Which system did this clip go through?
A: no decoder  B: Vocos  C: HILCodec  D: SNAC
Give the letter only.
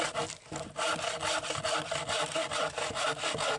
A